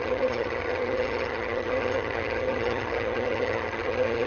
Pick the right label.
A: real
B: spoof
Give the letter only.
B